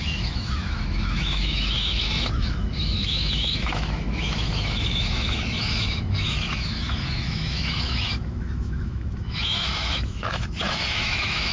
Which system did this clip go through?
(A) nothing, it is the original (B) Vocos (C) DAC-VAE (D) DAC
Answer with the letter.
C